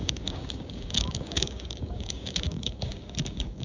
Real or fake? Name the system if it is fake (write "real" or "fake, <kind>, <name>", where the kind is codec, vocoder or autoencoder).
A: fake, codec, DAC